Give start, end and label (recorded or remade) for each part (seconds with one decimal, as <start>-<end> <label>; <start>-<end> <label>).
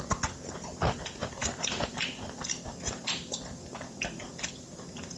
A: 0.0-5.2 recorded